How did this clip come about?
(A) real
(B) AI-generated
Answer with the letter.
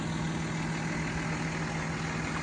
A